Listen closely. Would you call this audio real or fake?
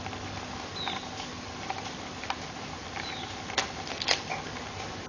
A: real